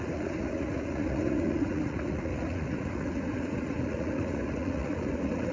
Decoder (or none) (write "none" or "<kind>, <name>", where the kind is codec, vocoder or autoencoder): vocoder, Vocos